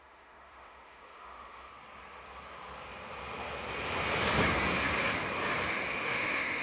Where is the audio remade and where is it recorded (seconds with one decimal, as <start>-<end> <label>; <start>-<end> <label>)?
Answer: 0.0-1.7 remade; 1.7-5.7 recorded; 5.7-6.6 remade